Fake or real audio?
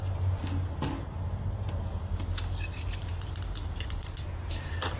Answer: fake